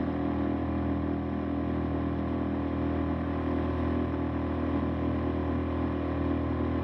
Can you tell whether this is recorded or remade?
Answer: recorded